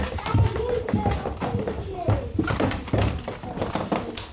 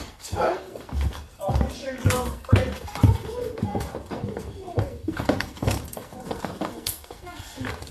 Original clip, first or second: first